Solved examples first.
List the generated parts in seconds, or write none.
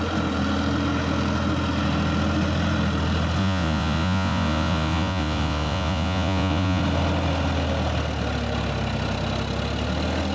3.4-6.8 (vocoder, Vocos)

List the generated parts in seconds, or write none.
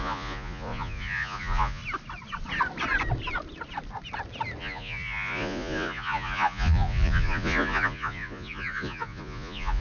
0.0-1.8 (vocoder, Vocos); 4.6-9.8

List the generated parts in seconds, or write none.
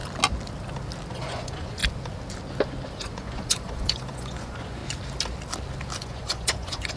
1.1-1.8 (vocoder, Vocos); 2.9-4.8; 6.0-7.0